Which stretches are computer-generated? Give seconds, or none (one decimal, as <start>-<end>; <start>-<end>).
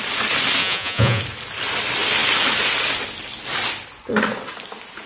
0.6-1.2